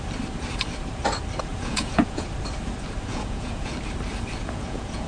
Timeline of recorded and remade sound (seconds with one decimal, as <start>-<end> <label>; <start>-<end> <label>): 0.0-1.5 recorded; 1.5-2.3 remade; 2.3-3.1 recorded; 3.1-3.7 remade; 3.7-4.4 recorded; 4.4-5.1 remade